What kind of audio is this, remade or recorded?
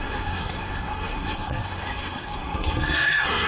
remade